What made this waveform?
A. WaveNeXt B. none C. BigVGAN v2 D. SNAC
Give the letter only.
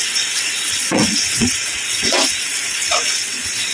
A